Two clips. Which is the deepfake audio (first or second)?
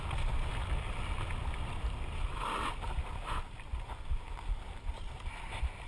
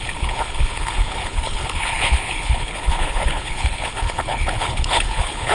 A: second